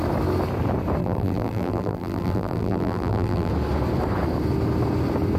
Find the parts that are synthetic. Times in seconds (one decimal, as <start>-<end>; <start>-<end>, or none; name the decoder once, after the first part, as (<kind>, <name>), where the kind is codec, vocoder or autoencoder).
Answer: 1.0-3.5 (vocoder, BigVGAN v2)